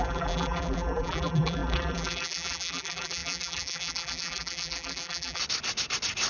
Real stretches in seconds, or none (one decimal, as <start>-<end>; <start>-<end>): 5.4-6.3